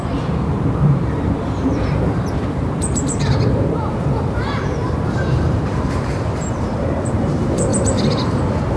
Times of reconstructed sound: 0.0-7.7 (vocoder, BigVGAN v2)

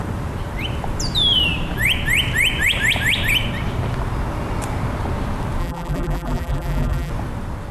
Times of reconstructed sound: 5.6-7.1 (vocoder, BigVGAN v2)

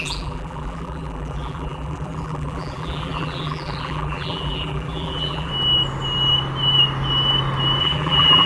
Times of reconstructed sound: 0.0-5.5 (vocoder, BigVGAN v2); 7.8-8.5

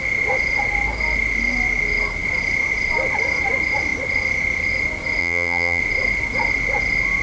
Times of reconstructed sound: 5.2-5.8 (vocoder, BigVGAN v2)

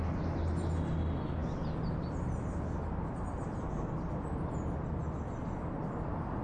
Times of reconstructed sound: none

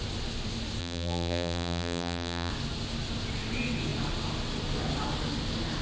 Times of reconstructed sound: 0.8-2.5 (vocoder, BigVGAN v2)

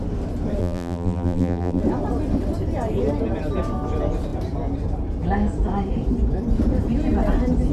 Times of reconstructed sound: 0.6-1.8 (vocoder, BigVGAN v2)